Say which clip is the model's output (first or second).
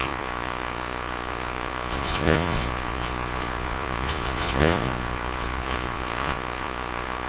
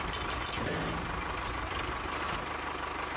first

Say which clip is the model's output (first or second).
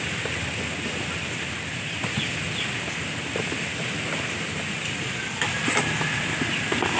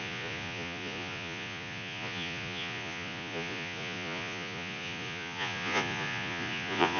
second